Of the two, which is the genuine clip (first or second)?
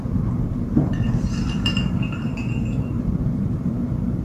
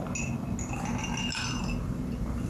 second